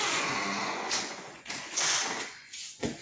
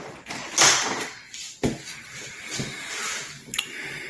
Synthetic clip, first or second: first